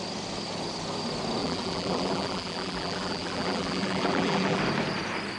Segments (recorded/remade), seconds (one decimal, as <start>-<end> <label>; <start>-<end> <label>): 0.0-1.4 recorded; 1.4-4.6 remade; 4.6-5.4 recorded